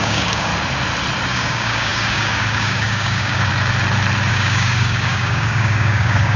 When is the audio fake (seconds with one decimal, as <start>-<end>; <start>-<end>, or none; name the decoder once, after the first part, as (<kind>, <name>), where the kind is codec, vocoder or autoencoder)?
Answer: 0.0-0.5 (codec, DAC); 1.3-3.5; 4.3-6.4